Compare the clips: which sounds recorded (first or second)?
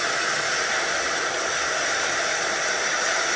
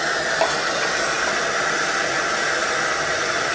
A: first